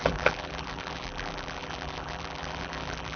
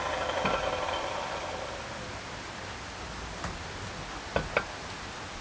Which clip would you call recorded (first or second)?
second